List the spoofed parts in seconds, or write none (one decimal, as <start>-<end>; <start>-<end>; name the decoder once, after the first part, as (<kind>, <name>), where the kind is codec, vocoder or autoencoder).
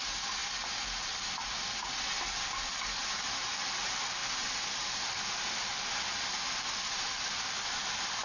none